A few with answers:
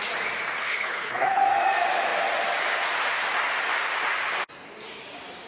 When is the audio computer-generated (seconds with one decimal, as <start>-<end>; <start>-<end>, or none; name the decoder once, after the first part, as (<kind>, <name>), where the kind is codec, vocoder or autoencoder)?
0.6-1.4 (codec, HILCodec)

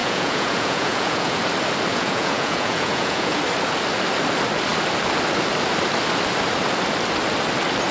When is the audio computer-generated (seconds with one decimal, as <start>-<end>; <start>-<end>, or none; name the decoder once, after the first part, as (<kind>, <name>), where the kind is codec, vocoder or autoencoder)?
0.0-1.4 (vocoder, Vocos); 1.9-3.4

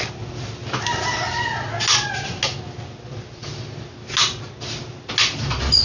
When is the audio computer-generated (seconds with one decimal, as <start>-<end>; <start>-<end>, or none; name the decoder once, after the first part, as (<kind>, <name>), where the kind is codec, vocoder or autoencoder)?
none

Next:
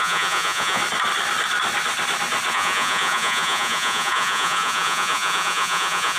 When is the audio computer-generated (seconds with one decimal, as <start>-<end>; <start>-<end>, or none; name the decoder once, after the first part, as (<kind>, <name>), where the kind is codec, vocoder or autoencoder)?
0.0-0.8 (vocoder, Vocos); 2.5-6.2

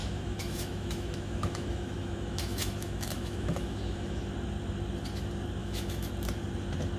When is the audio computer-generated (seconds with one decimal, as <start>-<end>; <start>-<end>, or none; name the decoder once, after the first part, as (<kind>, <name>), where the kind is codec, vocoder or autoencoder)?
0.0-4.2 (autoencoder, DAC-VAE); 5.6-6.1

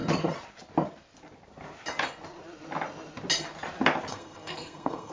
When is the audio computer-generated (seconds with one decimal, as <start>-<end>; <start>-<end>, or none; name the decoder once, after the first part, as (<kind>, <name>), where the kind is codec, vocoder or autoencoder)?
4.1-5.1 (codec, SNAC)